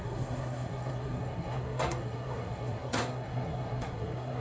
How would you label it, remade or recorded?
remade